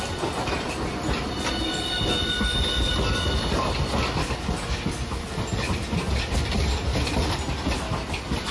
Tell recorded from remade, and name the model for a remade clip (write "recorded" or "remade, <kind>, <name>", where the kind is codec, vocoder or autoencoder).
recorded